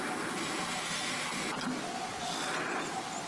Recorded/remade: recorded